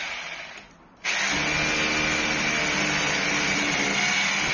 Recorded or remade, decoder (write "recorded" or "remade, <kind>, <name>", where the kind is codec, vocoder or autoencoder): recorded